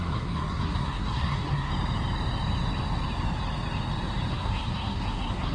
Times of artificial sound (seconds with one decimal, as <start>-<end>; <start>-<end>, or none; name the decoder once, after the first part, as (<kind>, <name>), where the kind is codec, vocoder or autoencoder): 0.0-1.7 (codec, SNAC); 4.3-5.5